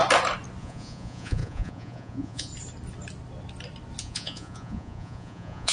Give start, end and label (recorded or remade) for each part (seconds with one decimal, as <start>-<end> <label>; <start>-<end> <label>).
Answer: 0.0-0.6 recorded; 0.6-2.5 remade; 2.5-4.0 recorded; 4.0-5.7 remade